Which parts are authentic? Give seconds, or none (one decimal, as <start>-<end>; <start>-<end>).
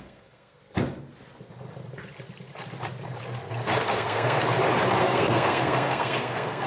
0.6-3.9; 4.4-5.0